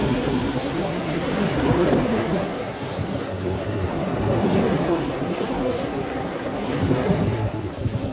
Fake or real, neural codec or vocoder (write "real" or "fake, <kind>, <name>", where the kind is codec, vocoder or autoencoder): fake, codec, SNAC